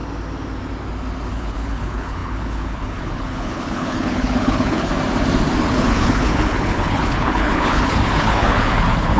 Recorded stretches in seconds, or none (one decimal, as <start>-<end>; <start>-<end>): 0.0-1.3; 4.9-5.7